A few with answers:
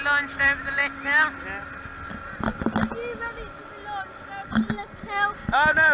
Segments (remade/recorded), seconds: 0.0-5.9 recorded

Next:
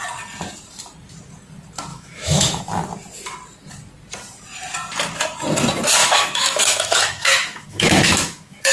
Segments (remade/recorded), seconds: 0.0-1.9 recorded; 1.9-2.6 remade; 2.6-6.0 recorded; 6.0-8.7 remade

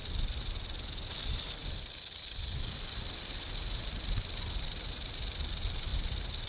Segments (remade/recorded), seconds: 0.0-6.5 recorded

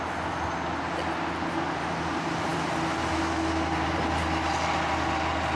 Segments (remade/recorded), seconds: 0.0-5.5 recorded

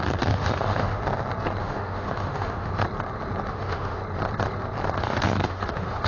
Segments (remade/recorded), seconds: 0.0-1.0 remade; 1.0-1.6 recorded; 1.6-2.7 remade; 2.7-3.5 recorded; 3.5-4.0 remade; 4.0-5.0 recorded; 5.0-6.1 remade